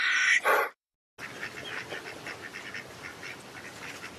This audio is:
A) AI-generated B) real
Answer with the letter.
B